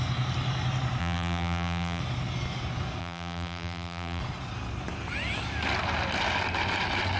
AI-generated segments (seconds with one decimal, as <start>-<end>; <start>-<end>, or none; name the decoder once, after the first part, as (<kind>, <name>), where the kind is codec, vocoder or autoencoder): 1.0-2.0 (vocoder, BigVGAN v2); 3.0-4.2